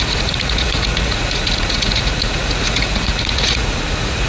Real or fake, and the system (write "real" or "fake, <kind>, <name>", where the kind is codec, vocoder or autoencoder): fake, vocoder, Vocos